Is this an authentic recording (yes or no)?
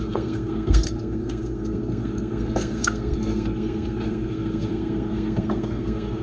no